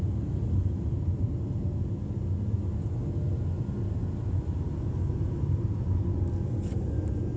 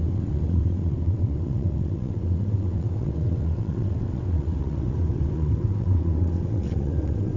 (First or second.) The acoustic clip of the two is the first